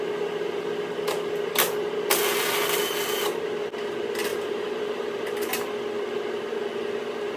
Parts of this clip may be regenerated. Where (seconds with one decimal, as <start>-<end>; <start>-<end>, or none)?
4.3-5.5